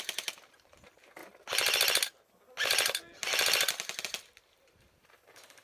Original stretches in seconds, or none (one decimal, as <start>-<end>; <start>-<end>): 1.2-4.0